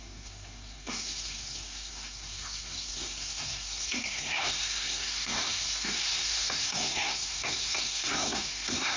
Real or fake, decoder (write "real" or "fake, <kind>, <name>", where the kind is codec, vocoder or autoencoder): fake, codec, SNAC